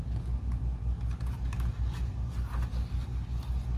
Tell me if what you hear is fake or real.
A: real